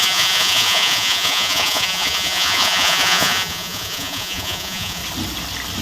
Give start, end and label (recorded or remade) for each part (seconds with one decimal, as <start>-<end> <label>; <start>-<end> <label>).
0.0-5.0 remade; 5.0-5.8 recorded